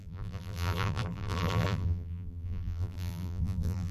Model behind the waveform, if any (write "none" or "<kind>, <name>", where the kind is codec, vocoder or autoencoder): vocoder, BigVGAN v2